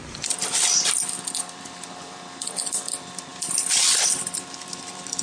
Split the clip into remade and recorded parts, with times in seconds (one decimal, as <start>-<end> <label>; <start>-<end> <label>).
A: 0.0-0.5 remade; 0.5-1.4 recorded; 1.4-5.2 remade